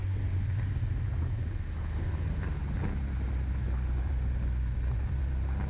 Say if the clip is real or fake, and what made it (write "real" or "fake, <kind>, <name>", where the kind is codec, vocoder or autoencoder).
real